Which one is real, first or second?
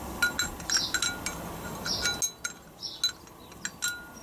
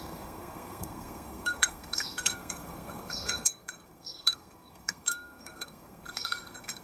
first